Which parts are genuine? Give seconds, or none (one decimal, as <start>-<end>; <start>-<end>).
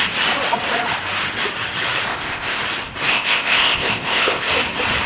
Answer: 0.0-2.1; 2.6-3.1; 4.5-5.1